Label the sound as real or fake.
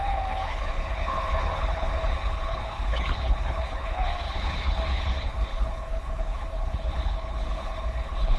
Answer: fake